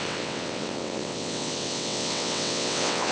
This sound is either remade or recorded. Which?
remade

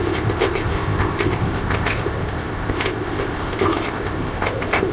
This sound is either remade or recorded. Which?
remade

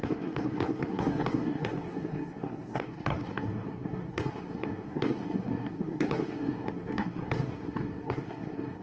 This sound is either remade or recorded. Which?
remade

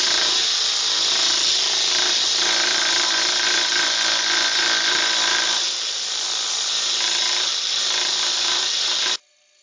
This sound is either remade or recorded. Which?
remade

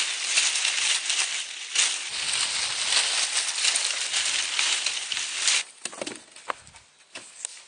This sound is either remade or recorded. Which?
recorded